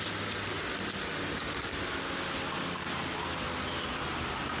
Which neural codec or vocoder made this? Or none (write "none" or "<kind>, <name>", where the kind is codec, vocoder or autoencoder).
none